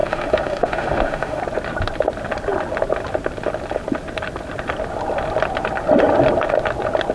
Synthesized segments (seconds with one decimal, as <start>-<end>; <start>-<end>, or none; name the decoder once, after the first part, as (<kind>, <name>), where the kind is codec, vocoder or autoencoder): 0.0-1.4 (autoencoder, DAC-VAE)